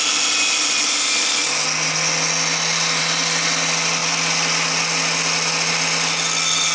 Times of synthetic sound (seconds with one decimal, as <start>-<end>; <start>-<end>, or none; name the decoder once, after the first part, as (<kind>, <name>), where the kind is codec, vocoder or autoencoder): none